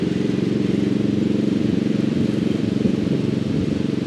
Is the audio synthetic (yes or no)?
yes